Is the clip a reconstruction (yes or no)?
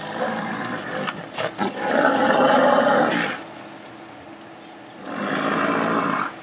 no